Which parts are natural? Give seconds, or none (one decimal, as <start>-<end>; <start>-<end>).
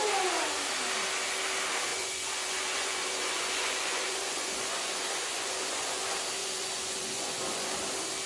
0.0-1.9; 6.0-6.4; 7.8-8.3